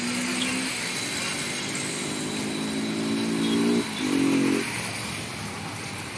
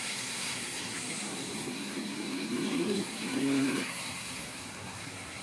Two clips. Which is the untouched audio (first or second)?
first